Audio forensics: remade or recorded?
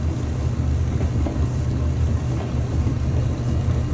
recorded